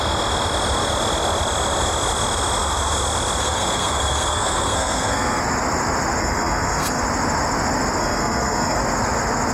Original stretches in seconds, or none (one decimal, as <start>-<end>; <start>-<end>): 0.0-3.4; 5.4-6.2; 7.0-8.0; 8.8-9.5